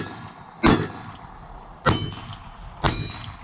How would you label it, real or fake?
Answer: real